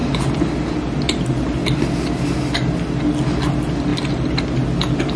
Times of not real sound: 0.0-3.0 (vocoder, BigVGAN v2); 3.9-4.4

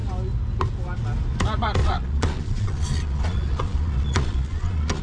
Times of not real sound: 1.8-5.0 (vocoder, Vocos)